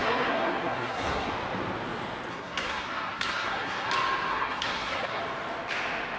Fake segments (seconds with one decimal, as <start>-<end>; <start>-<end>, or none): 0.0-1.3; 2.3-3.9; 4.3-5.2